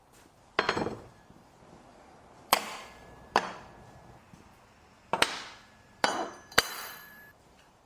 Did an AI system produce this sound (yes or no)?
yes